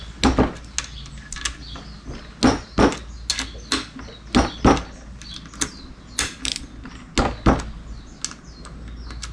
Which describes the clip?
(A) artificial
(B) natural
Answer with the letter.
B